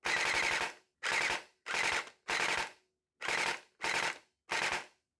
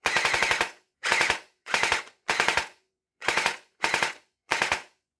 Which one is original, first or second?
first